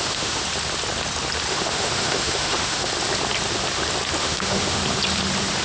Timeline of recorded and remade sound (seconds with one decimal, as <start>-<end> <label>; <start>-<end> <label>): 0.0-0.4 remade; 0.4-1.5 recorded; 1.5-2.9 remade; 2.9-4.2 recorded; 4.2-4.8 remade; 4.8-5.6 recorded